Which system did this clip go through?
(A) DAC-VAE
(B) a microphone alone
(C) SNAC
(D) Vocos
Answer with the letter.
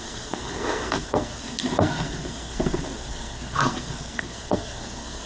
C